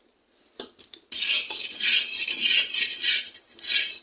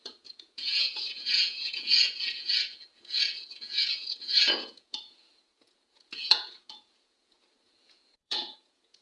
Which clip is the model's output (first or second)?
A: second